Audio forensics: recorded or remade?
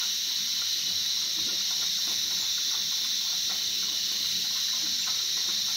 recorded